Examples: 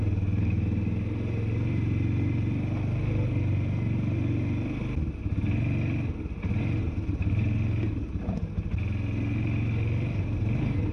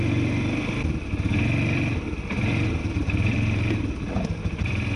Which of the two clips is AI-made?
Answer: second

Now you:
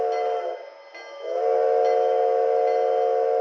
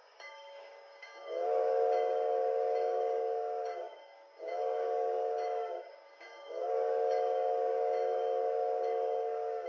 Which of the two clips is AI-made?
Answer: second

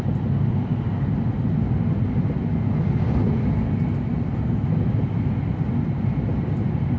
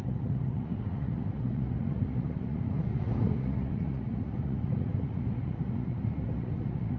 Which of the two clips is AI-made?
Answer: second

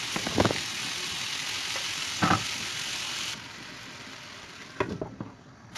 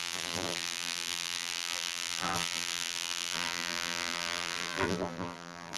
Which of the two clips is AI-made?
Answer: second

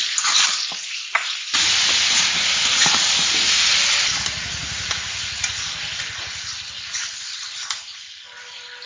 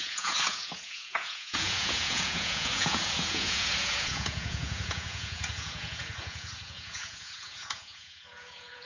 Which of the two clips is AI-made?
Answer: second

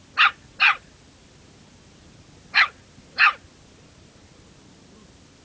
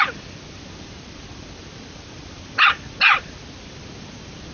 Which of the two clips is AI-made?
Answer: second